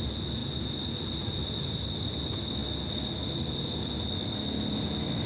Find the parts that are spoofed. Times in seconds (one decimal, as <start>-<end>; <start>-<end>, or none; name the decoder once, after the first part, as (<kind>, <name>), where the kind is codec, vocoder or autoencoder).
none